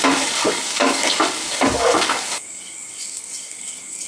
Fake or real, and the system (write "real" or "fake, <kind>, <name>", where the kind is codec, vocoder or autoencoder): fake, codec, DAC